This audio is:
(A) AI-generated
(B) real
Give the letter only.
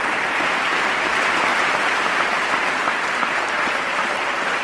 A